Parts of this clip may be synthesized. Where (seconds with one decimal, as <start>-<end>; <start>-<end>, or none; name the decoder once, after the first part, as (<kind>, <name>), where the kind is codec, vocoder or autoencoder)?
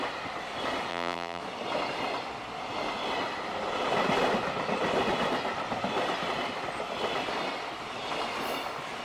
0.9-1.4 (vocoder, BigVGAN v2)